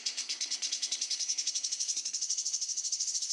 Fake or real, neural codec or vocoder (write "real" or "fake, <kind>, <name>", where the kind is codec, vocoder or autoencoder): fake, codec, SNAC